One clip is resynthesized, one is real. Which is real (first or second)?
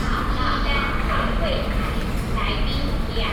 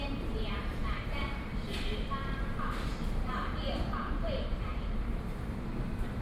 first